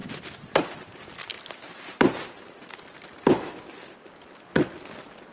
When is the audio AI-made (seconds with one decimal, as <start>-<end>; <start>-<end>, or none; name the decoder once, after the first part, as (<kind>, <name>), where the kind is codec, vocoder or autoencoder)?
none